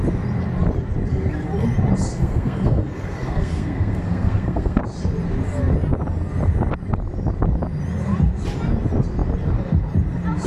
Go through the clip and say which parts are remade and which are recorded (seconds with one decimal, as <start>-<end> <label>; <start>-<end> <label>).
0.0-2.1 recorded; 2.1-4.8 remade; 4.8-10.5 recorded